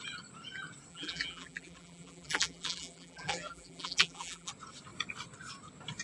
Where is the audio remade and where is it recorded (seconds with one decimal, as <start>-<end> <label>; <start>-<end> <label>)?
0.0-0.9 recorded; 0.9-4.5 remade; 4.5-6.0 recorded